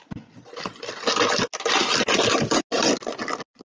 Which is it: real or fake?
real